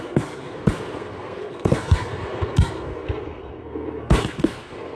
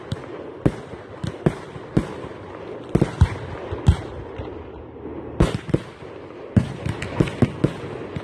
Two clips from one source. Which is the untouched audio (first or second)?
second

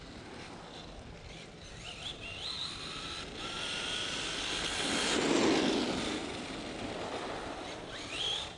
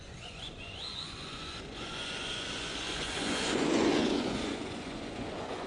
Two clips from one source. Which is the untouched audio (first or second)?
first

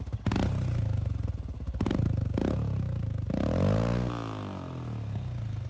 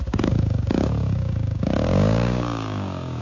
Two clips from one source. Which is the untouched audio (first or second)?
first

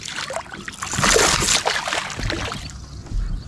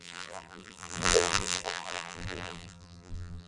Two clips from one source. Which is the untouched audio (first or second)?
first